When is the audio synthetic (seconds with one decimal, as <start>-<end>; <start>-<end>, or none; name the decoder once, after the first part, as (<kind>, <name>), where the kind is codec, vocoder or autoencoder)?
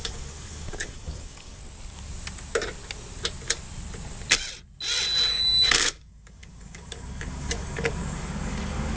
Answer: 0.0-1.6 (codec, DAC); 5.3-9.0